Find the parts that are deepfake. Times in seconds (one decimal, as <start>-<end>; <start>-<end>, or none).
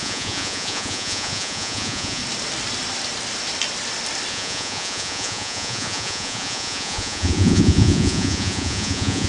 0.0-2.2; 4.3-9.3